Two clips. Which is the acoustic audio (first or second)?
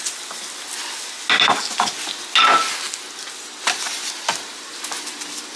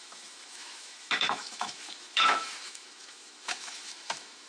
first